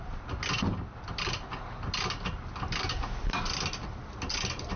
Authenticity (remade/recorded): recorded